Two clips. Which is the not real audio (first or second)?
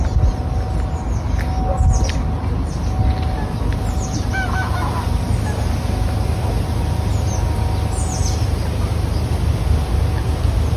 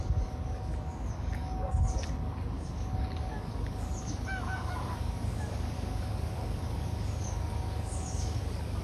second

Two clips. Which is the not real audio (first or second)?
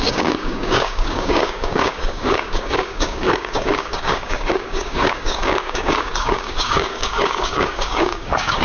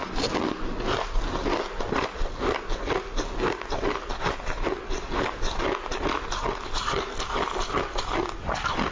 first